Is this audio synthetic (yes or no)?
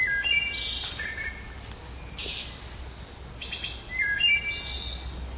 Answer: no